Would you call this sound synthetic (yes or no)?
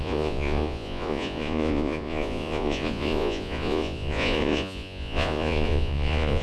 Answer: yes